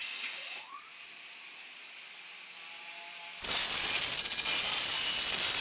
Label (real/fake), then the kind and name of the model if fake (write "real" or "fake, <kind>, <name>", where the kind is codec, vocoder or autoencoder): real